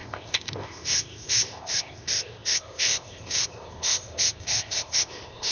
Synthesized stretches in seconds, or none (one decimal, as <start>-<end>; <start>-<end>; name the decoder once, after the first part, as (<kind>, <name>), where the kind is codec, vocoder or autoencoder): 0.0-5.5 (codec, ZipCodec)